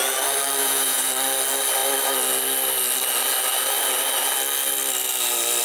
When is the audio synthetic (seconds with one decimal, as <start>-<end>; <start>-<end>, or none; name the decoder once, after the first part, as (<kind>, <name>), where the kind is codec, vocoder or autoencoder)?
0.6-1.1 (vocoder, Vocos)